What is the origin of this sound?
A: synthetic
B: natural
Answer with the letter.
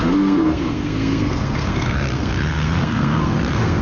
A